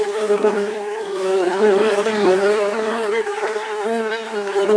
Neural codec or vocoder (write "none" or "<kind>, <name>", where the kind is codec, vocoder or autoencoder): codec, SNAC